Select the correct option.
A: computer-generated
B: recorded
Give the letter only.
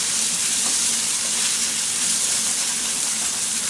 A